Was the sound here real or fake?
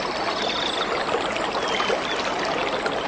real